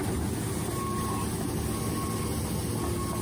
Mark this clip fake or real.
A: real